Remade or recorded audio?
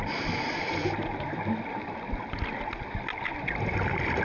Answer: recorded